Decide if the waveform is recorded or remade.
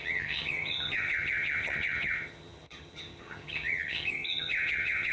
remade